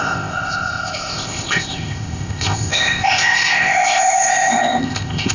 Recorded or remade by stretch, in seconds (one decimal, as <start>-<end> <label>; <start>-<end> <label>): 0.0-5.3 remade